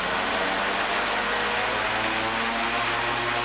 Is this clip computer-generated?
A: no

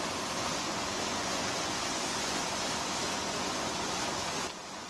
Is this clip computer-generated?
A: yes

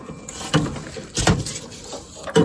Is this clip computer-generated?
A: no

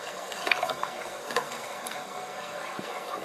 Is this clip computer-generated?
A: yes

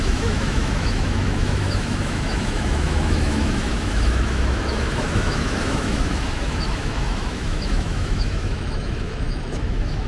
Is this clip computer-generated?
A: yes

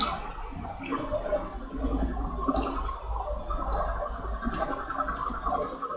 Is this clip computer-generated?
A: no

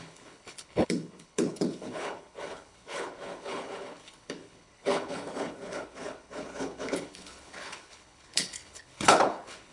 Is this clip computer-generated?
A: yes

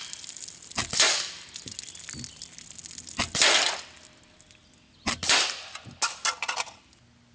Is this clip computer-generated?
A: no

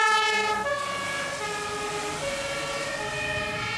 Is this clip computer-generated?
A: no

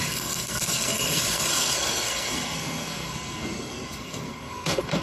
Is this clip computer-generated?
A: yes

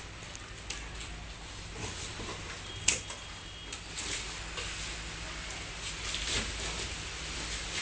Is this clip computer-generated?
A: no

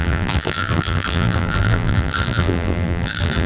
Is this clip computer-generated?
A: yes